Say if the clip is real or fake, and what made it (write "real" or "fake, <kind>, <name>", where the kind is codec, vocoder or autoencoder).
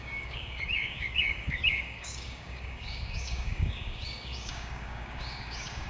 fake, codec, DAC